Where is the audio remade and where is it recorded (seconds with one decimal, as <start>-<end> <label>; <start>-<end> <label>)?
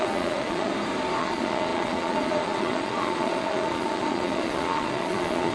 0.0-0.7 remade; 0.7-1.2 recorded; 1.2-5.5 remade